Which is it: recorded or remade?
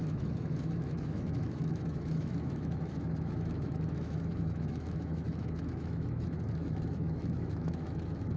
remade